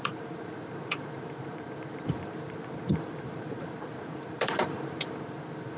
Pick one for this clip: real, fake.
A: fake